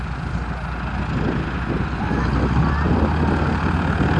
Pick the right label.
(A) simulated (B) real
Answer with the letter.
B